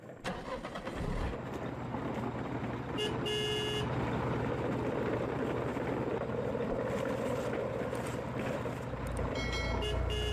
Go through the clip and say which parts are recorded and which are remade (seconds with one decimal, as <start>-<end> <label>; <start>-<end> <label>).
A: 0.0-7.6 recorded; 7.6-8.1 remade; 8.1-10.3 recorded